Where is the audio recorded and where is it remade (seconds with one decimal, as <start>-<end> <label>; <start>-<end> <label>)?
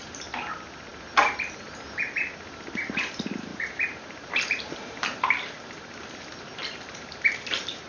0.0-3.5 recorded; 3.5-6.0 remade; 6.0-6.6 recorded; 6.6-7.9 remade